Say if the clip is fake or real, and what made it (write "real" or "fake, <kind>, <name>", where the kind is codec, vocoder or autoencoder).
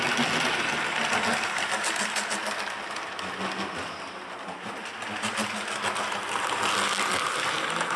real